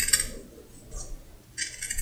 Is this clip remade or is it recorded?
recorded